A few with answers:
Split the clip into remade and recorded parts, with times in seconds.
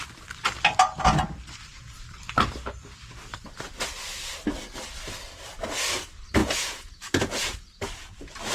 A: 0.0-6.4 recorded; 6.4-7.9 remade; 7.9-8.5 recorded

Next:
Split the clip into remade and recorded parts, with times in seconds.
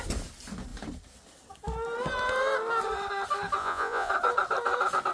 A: 0.0-3.6 recorded; 3.6-4.1 remade; 4.1-5.1 recorded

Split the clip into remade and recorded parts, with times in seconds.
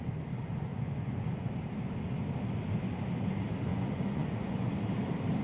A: 0.0-0.7 recorded; 0.7-1.5 remade; 1.5-3.7 recorded; 3.7-4.7 remade; 4.7-5.4 recorded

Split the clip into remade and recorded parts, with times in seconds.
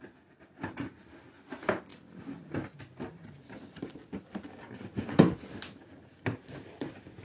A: 0.0-7.2 recorded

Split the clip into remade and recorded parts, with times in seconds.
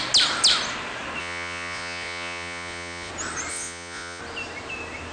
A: 0.0-1.2 recorded; 1.2-3.1 remade; 3.1-3.5 recorded; 3.5-4.2 remade; 4.2-5.1 recorded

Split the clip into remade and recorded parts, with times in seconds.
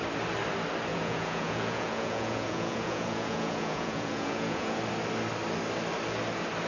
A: 0.0-0.9 recorded; 0.9-4.8 remade; 4.8-6.7 recorded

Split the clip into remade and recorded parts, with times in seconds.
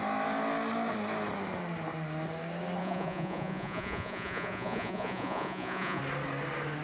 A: 0.0-2.8 recorded; 2.8-6.0 remade; 6.0-6.8 recorded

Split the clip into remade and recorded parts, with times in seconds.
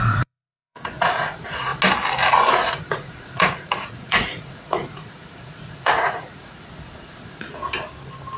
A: 0.0-1.7 remade; 1.7-2.5 recorded; 2.5-7.6 remade; 7.6-8.4 recorded